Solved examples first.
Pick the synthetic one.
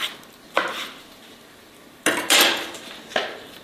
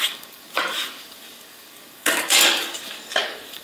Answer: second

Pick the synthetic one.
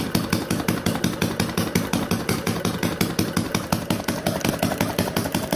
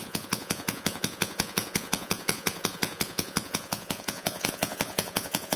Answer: second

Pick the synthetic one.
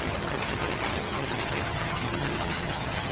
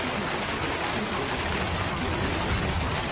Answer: first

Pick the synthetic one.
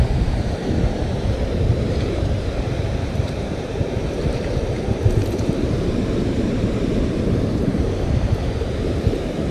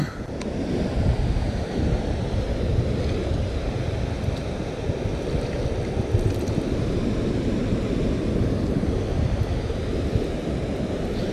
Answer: first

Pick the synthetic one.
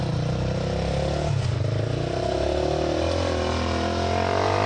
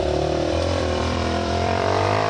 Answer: second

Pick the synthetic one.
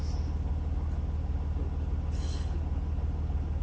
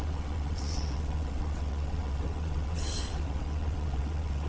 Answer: second